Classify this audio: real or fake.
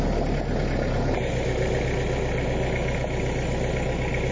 real